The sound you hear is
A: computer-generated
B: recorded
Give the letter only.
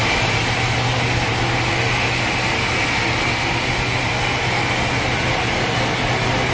B